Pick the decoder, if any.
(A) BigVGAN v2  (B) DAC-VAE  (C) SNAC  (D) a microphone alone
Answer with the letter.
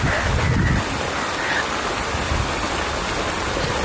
D